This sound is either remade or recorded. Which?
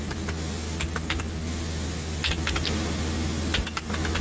recorded